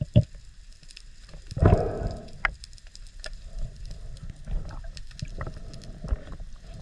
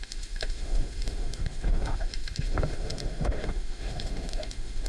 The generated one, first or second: second